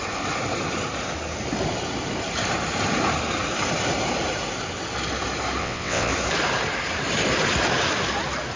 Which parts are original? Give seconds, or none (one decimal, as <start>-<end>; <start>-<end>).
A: 0.0-5.6; 6.1-8.6